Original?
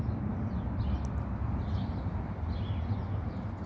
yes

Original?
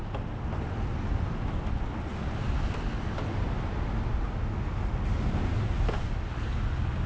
yes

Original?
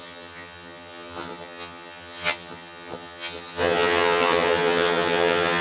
no